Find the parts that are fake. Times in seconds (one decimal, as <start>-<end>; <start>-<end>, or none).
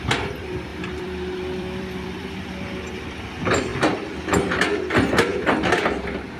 0.7-3.0; 5.3-5.8